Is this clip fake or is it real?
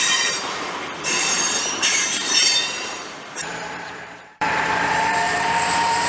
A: fake